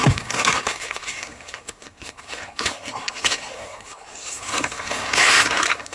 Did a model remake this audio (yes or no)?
yes